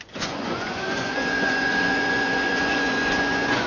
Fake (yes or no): yes